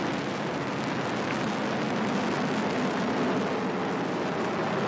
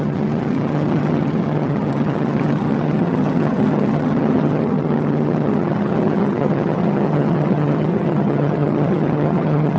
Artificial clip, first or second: second